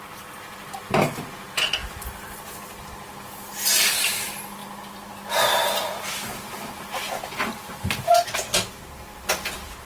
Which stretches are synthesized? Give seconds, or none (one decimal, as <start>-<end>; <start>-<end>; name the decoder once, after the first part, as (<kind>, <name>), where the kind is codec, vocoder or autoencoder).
none